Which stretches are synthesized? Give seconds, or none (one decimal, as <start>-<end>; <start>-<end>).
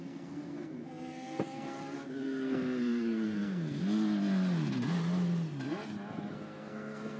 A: 0.0-3.8; 6.3-7.2